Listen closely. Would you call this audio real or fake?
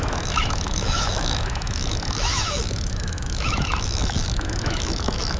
fake